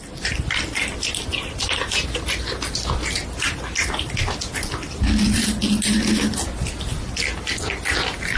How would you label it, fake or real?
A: real